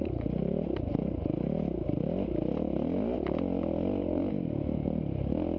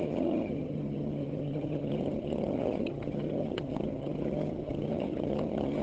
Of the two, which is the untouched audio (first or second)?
first